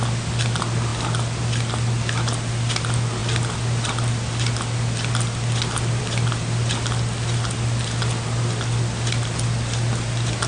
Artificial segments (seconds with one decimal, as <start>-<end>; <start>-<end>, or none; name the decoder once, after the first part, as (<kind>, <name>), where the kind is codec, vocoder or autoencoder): none